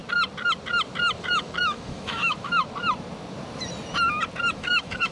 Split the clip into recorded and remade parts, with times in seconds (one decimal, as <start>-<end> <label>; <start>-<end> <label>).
0.0-1.2 recorded; 1.2-2.6 remade; 2.6-4.5 recorded; 4.5-5.1 remade